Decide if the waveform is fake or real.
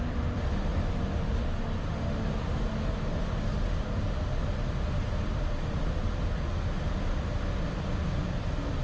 real